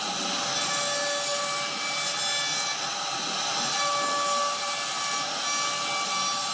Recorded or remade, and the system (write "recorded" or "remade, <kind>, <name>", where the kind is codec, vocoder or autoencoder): recorded